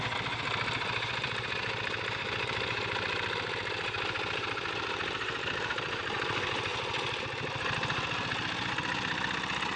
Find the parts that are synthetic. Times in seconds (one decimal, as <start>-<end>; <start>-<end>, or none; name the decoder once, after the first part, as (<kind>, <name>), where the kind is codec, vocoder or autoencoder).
none